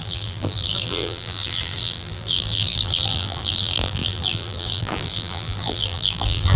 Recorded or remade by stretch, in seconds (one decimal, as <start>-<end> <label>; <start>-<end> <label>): 0.0-6.6 remade